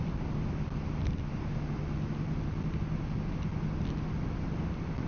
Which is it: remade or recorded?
recorded